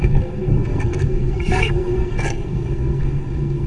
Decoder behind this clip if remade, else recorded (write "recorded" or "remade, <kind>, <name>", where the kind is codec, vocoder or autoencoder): remade, codec, SNAC